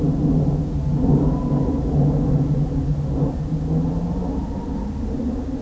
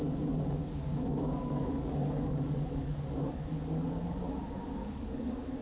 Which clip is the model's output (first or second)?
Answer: second